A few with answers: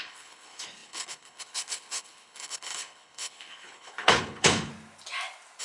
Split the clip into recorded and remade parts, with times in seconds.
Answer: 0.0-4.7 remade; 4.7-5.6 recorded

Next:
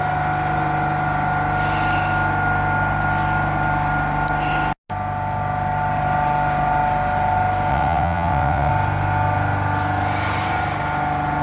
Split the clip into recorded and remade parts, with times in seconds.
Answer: 0.0-7.7 recorded; 7.7-8.7 remade; 8.7-11.4 recorded

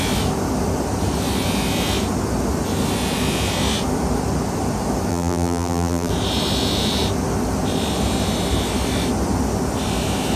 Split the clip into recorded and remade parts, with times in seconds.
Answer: 0.0-5.1 recorded; 5.1-6.1 remade; 6.1-10.4 recorded